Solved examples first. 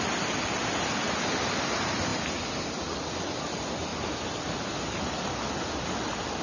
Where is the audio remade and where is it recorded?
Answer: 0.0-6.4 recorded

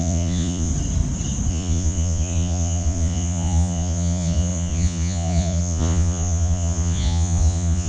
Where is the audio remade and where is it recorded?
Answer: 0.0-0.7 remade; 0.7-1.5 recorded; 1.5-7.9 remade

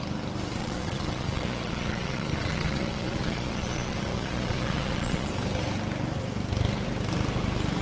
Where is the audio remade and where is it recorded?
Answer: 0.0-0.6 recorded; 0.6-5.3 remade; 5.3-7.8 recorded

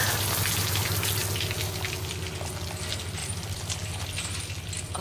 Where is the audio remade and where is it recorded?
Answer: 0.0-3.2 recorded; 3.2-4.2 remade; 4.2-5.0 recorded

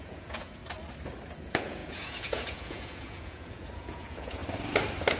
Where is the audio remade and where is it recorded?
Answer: 0.0-0.6 remade; 0.6-1.4 recorded; 1.4-4.4 remade; 4.4-5.2 recorded

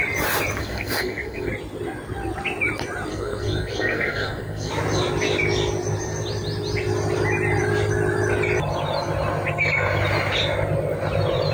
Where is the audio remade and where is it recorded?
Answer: 0.0-0.6 recorded; 0.6-1.5 remade; 1.5-3.1 recorded; 3.1-4.7 remade; 4.7-11.5 recorded

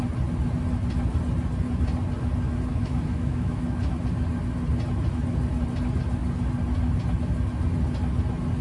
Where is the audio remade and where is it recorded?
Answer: 0.0-2.7 recorded; 2.7-3.9 remade; 3.9-8.6 recorded